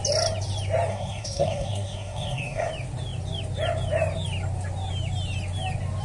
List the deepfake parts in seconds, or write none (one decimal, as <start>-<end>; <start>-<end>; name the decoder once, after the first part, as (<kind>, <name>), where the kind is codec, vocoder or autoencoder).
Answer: 0.9-2.7 (codec, SNAC)